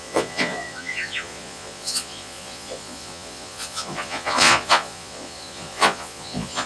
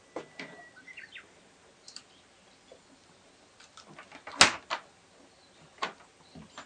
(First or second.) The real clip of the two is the second